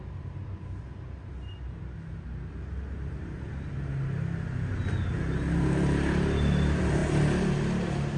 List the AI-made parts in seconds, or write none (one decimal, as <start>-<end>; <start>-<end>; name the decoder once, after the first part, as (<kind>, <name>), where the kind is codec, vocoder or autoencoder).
none